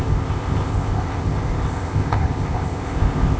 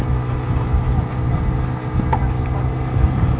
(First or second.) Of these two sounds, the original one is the second